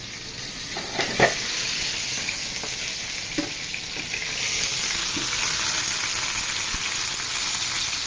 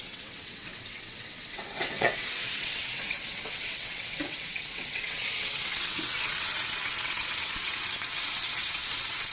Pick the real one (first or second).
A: first